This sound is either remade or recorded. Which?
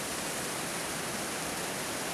recorded